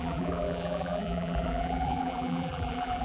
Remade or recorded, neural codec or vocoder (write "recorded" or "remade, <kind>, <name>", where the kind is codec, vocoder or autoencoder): remade, vocoder, BigVGAN v2